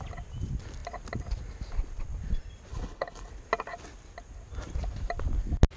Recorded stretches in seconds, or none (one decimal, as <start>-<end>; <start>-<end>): 0.0-2.7; 3.3-5.8